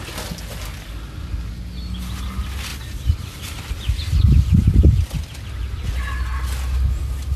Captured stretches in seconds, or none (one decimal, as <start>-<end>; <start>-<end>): 0.0-7.4